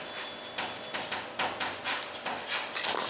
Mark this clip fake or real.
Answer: fake